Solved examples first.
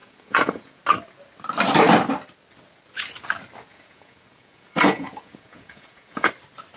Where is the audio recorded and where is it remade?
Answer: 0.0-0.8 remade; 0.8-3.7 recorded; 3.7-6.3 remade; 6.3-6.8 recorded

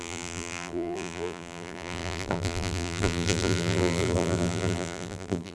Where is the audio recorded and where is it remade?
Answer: 0.0-5.5 remade

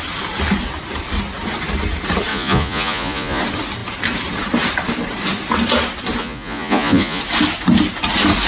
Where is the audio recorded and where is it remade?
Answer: 0.0-2.3 recorded; 2.3-3.4 remade; 3.4-6.2 recorded; 6.2-7.2 remade; 7.2-8.5 recorded

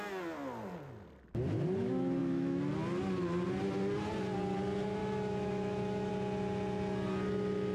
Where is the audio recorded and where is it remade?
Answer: 0.0-2.2 recorded; 2.2-2.7 remade; 2.7-5.0 recorded; 5.0-6.1 remade; 6.1-7.7 recorded

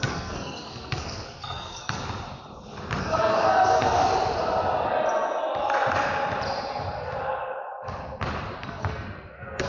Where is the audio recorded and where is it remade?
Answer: 0.0-2.0 remade; 2.0-3.0 recorded; 3.0-4.1 remade; 4.1-8.6 recorded; 8.6-9.7 remade

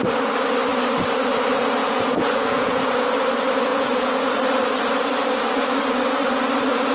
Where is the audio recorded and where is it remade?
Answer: 0.0-1.8 recorded; 1.8-2.8 remade; 2.8-3.7 recorded; 3.7-4.3 remade; 4.3-6.9 recorded

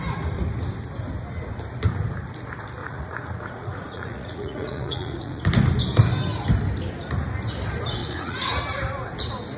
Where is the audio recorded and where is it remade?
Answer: 0.0-2.8 recorded; 2.8-5.4 remade; 5.4-8.0 recorded; 8.0-8.6 remade; 8.6-9.6 recorded

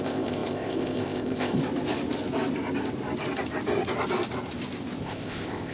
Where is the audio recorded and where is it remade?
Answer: 0.0-1.6 remade; 1.6-5.0 recorded; 5.0-5.7 remade